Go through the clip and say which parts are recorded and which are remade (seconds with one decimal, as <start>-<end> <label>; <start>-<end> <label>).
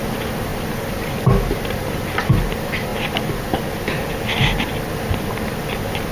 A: 0.0-6.1 recorded